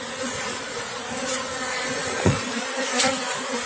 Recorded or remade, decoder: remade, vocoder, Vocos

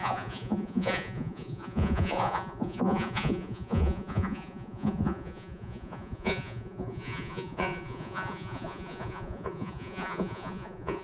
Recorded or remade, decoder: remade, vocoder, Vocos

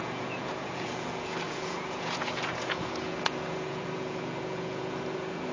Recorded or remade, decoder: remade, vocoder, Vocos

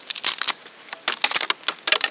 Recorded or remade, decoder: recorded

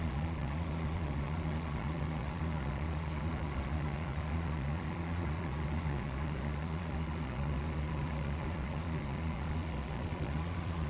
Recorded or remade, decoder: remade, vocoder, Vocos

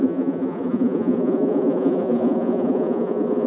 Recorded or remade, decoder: remade, vocoder, Vocos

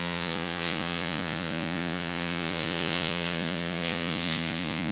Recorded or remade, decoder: remade, vocoder, Vocos